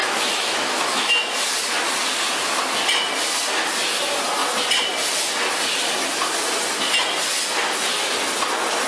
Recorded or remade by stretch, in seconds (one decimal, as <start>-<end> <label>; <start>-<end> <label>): 0.0-1.1 remade; 1.1-8.9 recorded